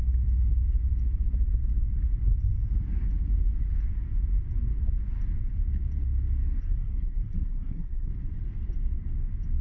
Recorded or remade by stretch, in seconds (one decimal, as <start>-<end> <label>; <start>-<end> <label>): 0.0-6.6 recorded; 6.6-8.1 remade; 8.1-9.6 recorded